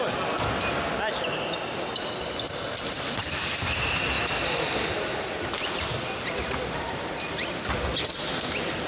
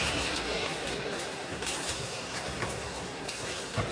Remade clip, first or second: second